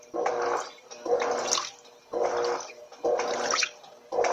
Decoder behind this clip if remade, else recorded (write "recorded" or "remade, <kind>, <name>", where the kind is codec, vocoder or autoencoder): recorded